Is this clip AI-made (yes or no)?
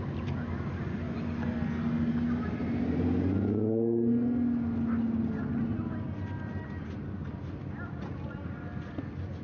no